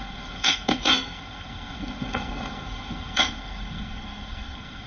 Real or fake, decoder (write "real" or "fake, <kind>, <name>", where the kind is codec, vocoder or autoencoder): fake, codec, SNAC